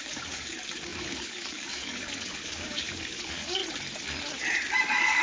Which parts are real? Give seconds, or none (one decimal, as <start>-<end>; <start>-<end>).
3.6-4.8